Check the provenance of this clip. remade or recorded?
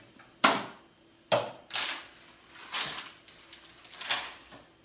recorded